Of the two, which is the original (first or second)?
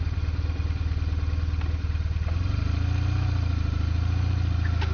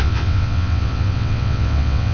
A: first